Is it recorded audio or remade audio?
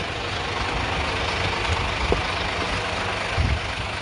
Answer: recorded